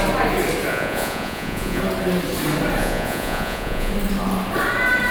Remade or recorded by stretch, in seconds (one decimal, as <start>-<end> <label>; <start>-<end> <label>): 0.0-0.7 recorded; 0.7-1.8 remade; 1.8-2.8 recorded; 2.8-3.9 remade; 3.9-5.1 recorded